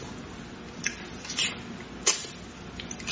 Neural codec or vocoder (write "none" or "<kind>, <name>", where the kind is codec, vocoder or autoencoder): none